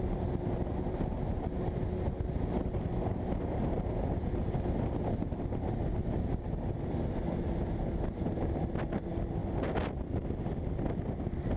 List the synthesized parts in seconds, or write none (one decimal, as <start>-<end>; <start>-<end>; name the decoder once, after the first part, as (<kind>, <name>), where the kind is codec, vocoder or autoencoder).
none